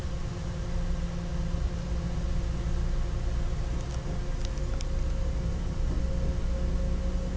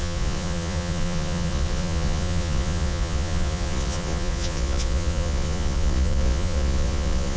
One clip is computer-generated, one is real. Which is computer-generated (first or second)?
second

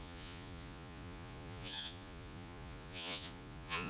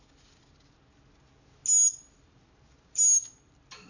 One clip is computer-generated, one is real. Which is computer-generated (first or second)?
first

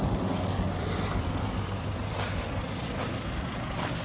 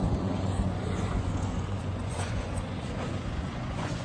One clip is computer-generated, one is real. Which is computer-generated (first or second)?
second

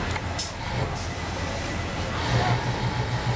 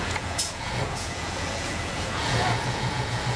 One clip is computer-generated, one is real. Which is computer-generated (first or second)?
second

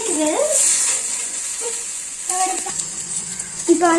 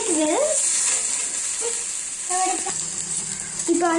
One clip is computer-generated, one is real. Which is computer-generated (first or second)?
first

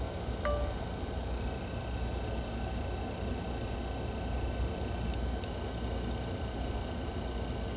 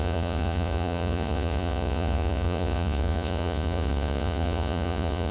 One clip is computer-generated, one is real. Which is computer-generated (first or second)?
second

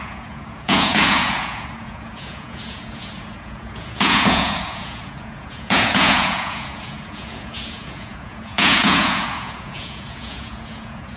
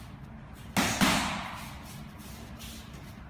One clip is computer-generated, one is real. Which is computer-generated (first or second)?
first